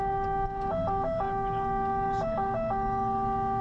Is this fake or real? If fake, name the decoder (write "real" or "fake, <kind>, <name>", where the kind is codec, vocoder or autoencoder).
real